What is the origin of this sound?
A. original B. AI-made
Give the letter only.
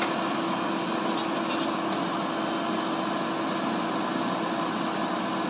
A